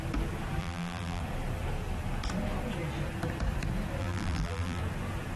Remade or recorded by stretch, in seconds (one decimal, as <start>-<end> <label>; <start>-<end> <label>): 0.0-0.6 recorded; 0.6-1.2 remade; 1.2-4.0 recorded; 4.0-4.8 remade; 4.8-5.4 recorded